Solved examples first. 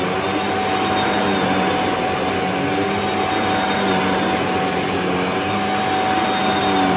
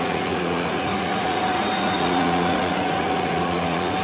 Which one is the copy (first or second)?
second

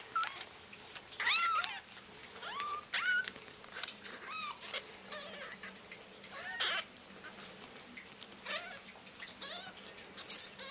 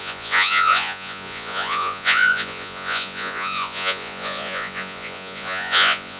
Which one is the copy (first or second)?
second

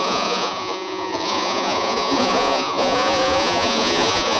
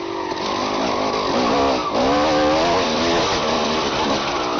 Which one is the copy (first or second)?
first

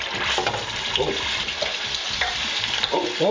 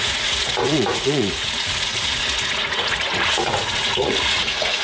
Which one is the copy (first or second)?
second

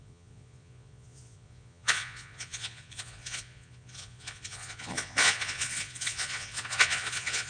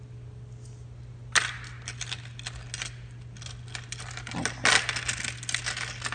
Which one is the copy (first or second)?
first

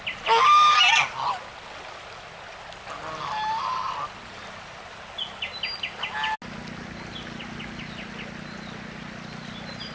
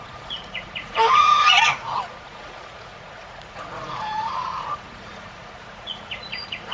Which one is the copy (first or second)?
second